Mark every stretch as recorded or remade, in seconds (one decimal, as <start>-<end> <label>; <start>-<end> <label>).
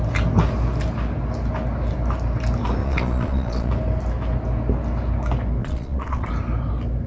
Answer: 0.0-2.8 recorded; 2.8-3.7 remade; 3.7-5.6 recorded; 5.6-6.3 remade; 6.3-7.1 recorded